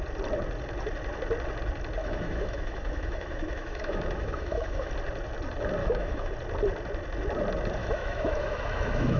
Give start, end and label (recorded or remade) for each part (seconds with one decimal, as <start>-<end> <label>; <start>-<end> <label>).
0.0-2.0 recorded; 2.0-4.9 remade; 4.9-5.8 recorded; 5.8-6.3 remade; 6.3-7.8 recorded; 7.8-9.2 remade